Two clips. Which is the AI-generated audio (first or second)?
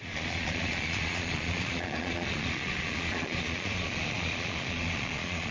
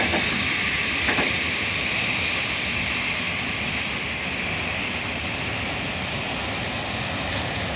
first